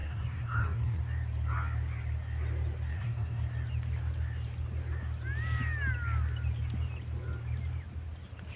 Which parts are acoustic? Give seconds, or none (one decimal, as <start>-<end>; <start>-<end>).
1.0-2.9; 3.4-8.6